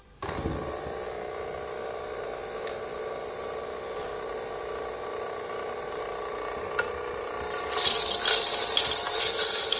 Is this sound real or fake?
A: real